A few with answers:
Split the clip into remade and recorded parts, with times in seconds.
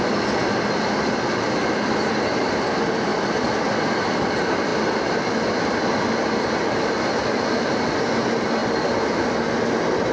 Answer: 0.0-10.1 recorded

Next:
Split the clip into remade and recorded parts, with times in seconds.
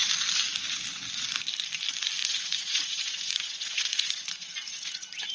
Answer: 0.0-2.2 recorded; 2.2-5.3 remade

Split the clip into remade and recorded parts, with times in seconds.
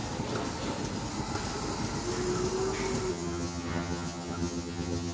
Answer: 0.0-3.1 recorded; 3.1-5.1 remade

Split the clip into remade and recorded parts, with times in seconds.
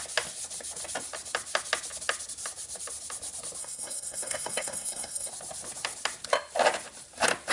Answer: 0.0-3.6 recorded; 3.6-5.3 remade; 5.3-7.5 recorded